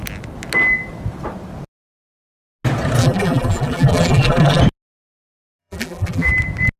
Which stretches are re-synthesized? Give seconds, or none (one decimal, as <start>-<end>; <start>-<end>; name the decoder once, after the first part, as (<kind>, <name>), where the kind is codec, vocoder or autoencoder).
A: 3.0-4.6 (vocoder, BigVGAN v2); 5.6-6.3